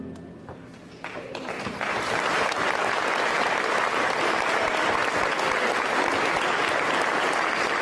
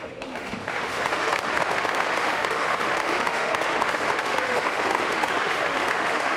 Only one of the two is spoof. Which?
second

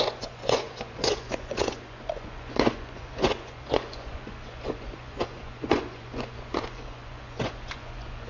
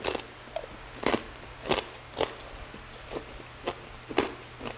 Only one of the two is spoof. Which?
first